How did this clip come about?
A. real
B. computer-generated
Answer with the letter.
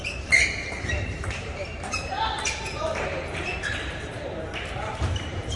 B